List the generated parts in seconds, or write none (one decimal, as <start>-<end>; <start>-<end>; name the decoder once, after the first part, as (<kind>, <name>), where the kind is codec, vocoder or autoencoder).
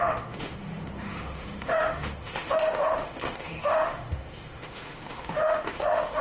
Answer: 0.0-6.2 (autoencoder, DAC-VAE)